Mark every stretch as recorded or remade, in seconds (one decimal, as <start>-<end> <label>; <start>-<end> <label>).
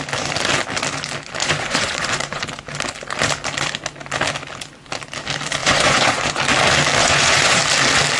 0.0-1.4 recorded; 1.4-2.5 remade; 2.5-5.6 recorded; 5.6-6.4 remade; 6.4-7.0 recorded; 7.0-7.6 remade; 7.6-8.2 recorded